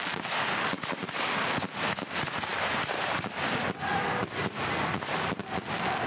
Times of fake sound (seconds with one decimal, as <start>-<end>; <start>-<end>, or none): none